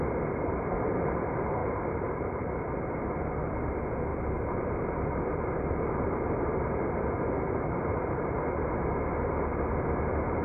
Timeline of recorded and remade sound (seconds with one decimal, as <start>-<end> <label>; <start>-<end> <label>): 0.0-1.6 recorded; 1.6-2.5 remade; 2.5-4.1 recorded; 4.1-6.4 remade; 6.4-7.9 recorded; 7.9-8.4 remade; 8.4-10.4 recorded